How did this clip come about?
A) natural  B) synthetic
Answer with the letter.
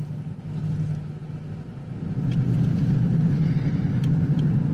A